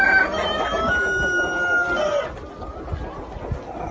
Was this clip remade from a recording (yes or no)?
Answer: no